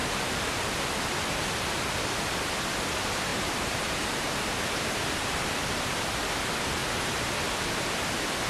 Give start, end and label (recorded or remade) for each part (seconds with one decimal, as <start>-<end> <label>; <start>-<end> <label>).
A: 0.0-1.0 remade; 1.0-3.3 recorded; 3.3-5.5 remade; 5.5-8.5 recorded